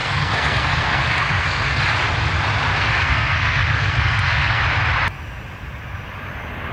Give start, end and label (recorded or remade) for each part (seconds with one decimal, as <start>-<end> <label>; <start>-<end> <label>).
0.0-1.8 remade; 1.8-2.7 recorded; 2.7-4.6 remade; 4.6-6.7 recorded